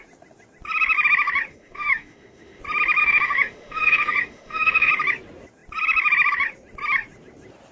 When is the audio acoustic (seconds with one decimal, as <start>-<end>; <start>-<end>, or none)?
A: 0.0-1.5; 2.6-3.0; 4.9-7.7

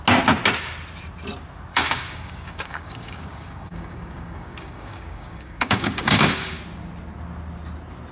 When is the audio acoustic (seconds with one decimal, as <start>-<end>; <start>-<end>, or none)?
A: 0.0-1.7; 6.6-8.1

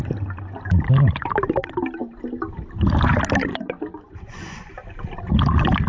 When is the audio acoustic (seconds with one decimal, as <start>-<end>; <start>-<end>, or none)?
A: 0.0-3.5; 4.7-5.9

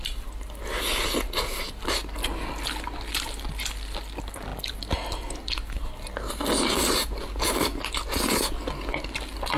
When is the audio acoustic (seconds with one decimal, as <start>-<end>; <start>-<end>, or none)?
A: 0.0-9.6

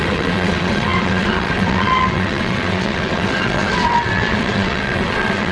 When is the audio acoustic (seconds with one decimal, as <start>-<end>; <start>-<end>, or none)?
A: none

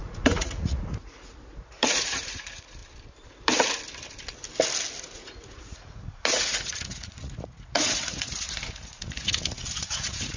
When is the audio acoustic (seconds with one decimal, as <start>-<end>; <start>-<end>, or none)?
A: 2.8-5.0

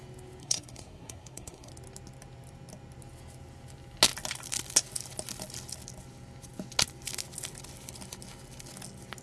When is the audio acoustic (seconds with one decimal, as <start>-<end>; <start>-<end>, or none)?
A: 0.0-0.4; 1.7-9.2

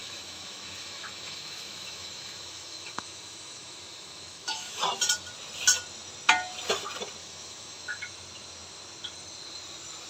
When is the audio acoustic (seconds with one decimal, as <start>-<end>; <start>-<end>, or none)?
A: 4.8-7.2; 8.0-10.1